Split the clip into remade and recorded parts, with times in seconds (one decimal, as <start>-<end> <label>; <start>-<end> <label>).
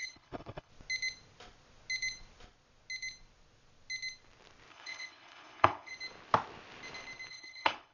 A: 0.0-0.7 remade; 0.7-4.7 recorded; 4.7-5.9 remade; 5.9-7.3 recorded; 7.3-7.9 remade